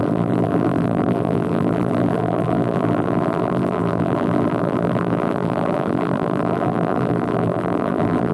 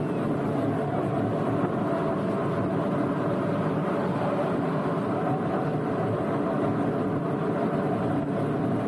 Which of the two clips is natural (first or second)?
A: second